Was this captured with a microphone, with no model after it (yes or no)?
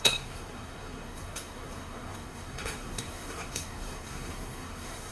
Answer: no